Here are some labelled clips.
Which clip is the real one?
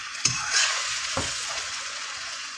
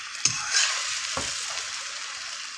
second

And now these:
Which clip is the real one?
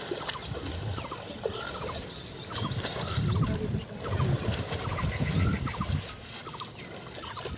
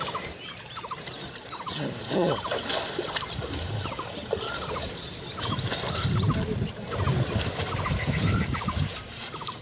first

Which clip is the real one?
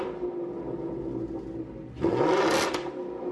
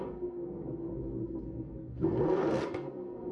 first